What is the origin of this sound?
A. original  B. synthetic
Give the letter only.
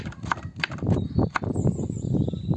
A